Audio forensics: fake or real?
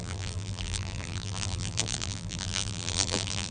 fake